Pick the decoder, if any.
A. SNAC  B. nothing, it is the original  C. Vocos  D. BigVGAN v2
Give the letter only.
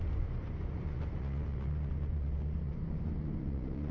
C